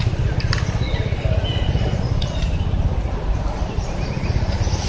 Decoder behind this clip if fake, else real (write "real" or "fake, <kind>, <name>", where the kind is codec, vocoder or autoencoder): real